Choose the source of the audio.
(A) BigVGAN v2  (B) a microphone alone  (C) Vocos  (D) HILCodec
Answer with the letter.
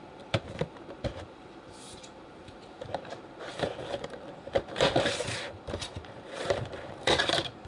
A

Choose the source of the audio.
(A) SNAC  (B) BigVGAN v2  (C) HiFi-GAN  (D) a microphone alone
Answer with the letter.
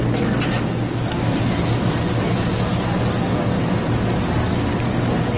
D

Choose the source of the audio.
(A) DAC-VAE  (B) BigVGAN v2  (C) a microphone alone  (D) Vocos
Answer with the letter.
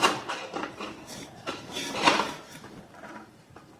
B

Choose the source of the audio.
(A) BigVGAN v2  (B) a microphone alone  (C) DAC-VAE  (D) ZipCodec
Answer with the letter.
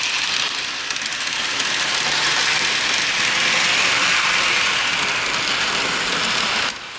B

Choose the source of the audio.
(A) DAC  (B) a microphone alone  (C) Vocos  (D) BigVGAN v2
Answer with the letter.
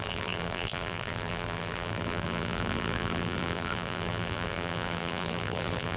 D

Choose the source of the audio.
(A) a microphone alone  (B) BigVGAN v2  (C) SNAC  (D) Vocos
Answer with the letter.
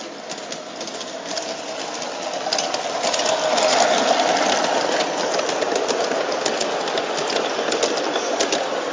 A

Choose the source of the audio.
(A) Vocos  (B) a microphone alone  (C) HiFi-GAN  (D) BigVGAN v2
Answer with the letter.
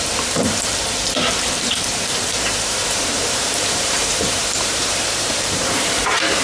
D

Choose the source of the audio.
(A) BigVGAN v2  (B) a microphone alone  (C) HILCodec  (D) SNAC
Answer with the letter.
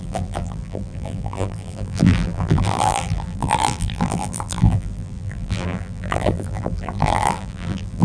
A